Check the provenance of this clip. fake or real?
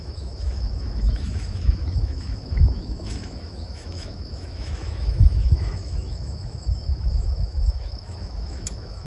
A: fake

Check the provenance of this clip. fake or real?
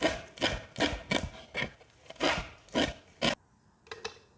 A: real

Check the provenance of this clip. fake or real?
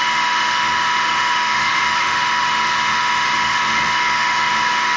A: fake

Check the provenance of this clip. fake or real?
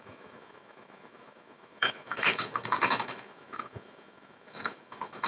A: fake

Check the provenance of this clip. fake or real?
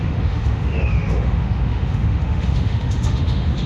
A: fake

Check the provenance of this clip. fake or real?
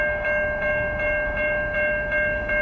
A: fake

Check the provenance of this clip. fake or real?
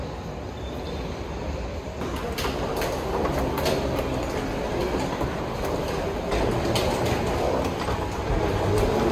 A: real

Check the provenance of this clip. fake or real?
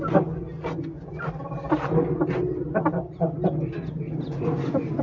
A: real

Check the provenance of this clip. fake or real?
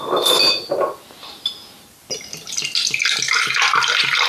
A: real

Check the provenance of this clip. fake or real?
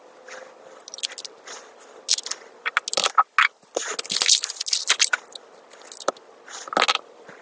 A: real